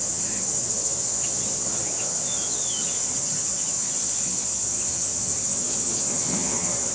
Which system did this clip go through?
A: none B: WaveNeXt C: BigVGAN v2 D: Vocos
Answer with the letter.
D